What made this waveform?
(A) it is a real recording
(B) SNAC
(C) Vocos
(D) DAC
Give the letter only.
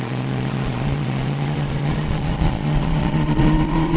C